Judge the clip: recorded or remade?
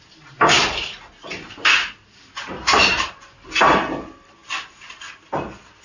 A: recorded